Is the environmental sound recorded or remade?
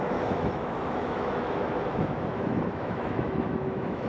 remade